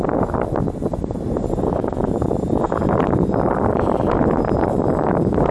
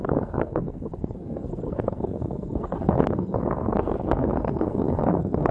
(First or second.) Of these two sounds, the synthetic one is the second